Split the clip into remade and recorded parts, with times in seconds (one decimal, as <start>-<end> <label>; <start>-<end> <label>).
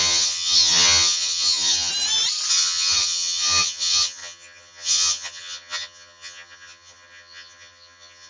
0.0-1.9 remade; 1.9-2.5 recorded; 2.5-8.3 remade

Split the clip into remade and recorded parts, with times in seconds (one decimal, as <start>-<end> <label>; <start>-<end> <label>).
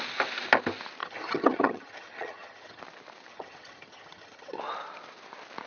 0.0-1.0 recorded; 1.0-2.8 remade; 2.8-3.3 recorded; 3.3-4.6 remade; 4.6-5.7 recorded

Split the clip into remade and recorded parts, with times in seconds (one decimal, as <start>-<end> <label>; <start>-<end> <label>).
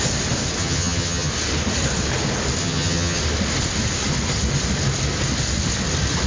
0.0-0.6 recorded; 0.6-1.3 remade; 1.3-2.6 recorded; 2.6-3.2 remade; 3.2-6.3 recorded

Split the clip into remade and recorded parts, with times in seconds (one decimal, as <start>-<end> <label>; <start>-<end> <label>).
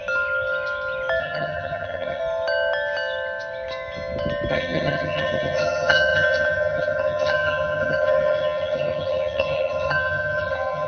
0.0-1.2 recorded; 1.2-2.2 remade; 2.2-4.5 recorded; 4.5-10.9 remade